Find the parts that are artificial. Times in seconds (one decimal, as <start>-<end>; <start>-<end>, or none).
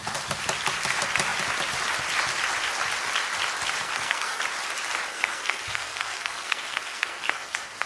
3.8-4.4; 5.1-7.9